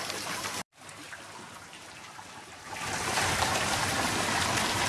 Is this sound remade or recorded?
remade